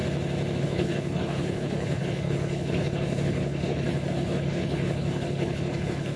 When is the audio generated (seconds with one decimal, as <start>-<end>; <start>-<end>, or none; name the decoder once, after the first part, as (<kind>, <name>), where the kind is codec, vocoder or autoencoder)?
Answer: 0.6-6.2 (codec, HILCodec)